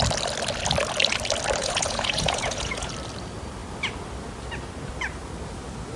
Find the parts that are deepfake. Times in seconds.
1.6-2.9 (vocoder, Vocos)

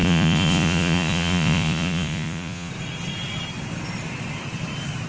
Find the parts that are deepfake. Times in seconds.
0.0-2.7 (vocoder, Vocos)

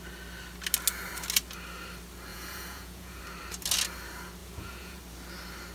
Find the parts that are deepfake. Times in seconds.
2.3-3.2 (vocoder, Vocos); 4.4-5.0

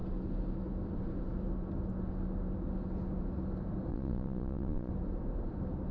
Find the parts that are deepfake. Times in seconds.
3.9-4.9 (vocoder, Vocos)